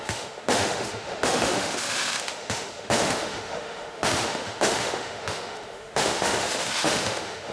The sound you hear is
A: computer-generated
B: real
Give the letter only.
A